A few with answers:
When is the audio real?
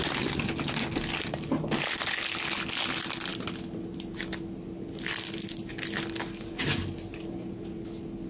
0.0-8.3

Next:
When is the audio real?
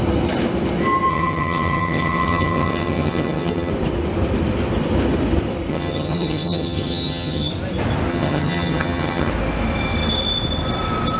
0.0-1.1; 3.7-5.7; 7.5-8.1; 9.3-11.2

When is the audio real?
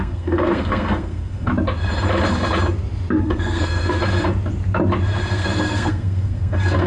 1.5-3.2; 4.0-5.3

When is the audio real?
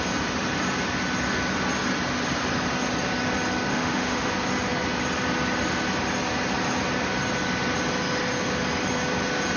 0.0-3.7; 4.3-9.6